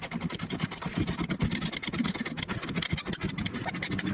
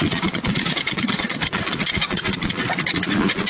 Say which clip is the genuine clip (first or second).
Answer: first